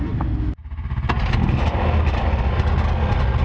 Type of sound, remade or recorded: recorded